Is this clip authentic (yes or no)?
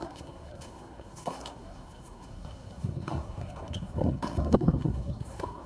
no